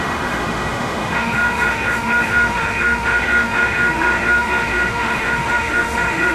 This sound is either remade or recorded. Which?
remade